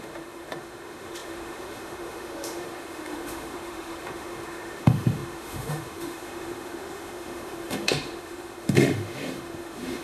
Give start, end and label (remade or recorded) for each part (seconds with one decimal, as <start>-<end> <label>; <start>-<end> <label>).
0.0-10.0 remade